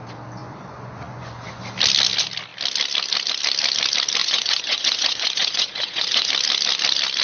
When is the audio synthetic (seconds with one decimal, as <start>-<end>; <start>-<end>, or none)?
0.4-1.6; 4.2-6.3